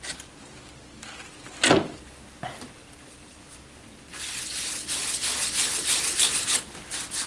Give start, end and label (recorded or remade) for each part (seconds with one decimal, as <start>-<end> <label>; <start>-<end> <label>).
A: 0.0-2.8 recorded; 2.8-4.7 remade; 4.7-7.3 recorded